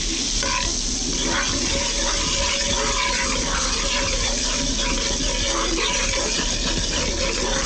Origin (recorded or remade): recorded